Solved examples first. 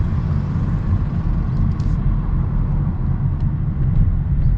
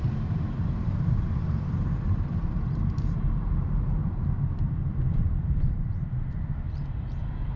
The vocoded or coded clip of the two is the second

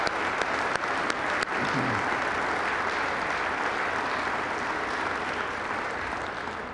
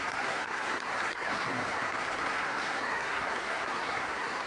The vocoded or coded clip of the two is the second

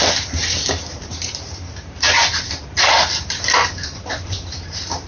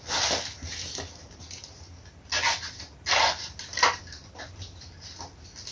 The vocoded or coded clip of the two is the first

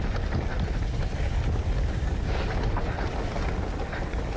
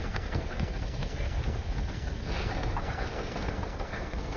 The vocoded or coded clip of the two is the second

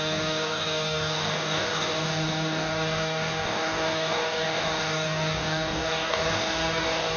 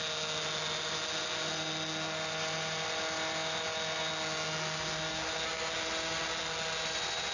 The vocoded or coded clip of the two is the first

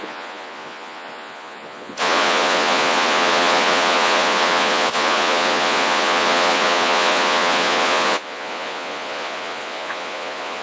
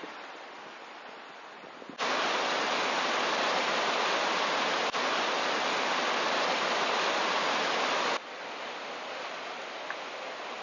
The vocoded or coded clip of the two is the first